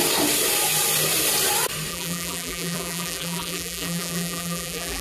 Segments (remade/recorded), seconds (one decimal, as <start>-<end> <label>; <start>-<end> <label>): 0.0-1.9 recorded; 1.9-5.0 remade